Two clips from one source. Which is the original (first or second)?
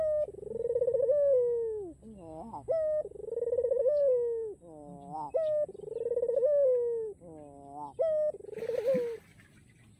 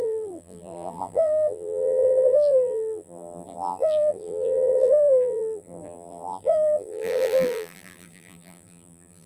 first